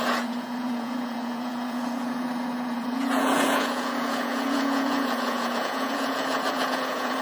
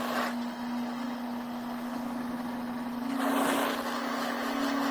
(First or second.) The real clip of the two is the second